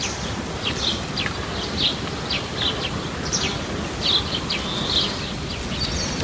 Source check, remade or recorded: recorded